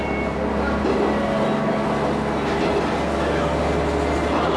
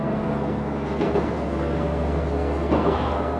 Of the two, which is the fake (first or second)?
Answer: second